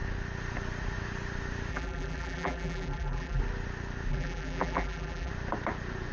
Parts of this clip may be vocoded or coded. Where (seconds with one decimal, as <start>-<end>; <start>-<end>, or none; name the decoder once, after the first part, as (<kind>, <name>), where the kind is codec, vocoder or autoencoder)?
1.7-3.4 (vocoder, BigVGAN v2); 4.1-5.3